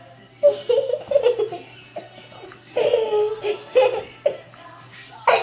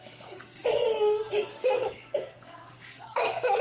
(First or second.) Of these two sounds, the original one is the first